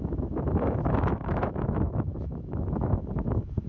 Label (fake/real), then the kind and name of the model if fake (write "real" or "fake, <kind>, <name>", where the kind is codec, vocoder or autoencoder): fake, autoencoder, DAC-VAE